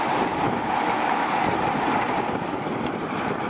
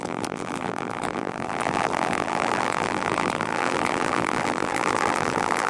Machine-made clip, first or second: second